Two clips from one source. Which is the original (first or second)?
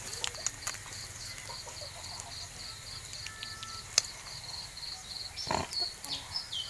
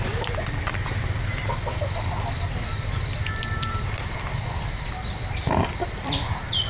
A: first